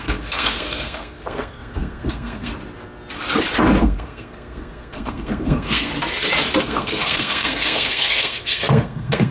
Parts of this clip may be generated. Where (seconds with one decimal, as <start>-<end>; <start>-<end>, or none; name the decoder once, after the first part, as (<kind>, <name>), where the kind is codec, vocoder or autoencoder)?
0.0-2.5 (codec, SNAC); 3.8-5.9; 6.6-9.3